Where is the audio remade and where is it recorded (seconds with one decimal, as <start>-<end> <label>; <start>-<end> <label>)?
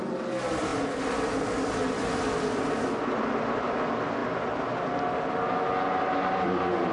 0.0-6.9 recorded